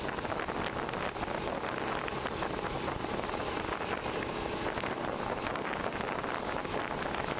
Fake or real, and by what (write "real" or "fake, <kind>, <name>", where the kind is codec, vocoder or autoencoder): real